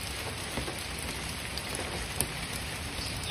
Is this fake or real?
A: real